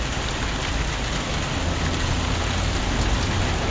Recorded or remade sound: recorded